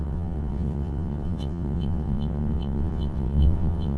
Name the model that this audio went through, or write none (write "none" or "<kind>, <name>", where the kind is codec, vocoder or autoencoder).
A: vocoder, WaveNeXt